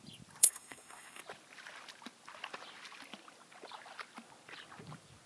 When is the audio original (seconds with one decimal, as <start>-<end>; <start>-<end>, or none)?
0.0-0.4; 1.2-5.3